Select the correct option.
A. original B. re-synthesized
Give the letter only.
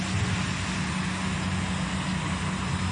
A